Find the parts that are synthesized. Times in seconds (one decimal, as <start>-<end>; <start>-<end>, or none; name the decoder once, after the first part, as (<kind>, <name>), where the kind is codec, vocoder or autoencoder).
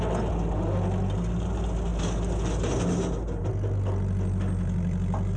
none